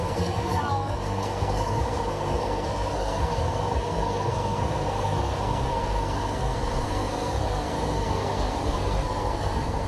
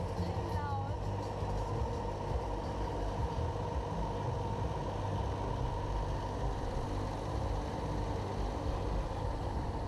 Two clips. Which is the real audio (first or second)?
second